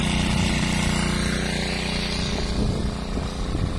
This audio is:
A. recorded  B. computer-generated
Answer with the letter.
A